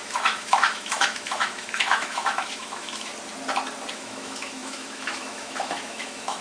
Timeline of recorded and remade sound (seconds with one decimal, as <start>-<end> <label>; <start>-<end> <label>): 0.0-3.1 remade; 3.1-3.9 recorded; 3.9-6.4 remade